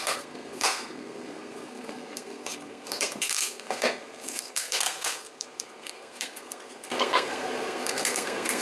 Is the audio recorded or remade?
remade